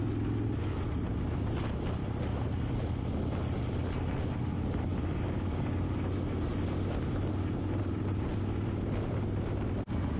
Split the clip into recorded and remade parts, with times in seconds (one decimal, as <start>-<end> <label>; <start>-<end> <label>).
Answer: 0.0-10.2 recorded